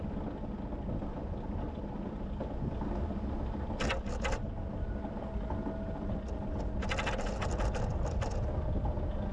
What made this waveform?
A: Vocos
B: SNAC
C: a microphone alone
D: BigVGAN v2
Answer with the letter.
C